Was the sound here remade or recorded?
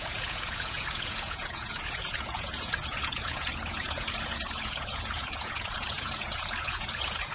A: remade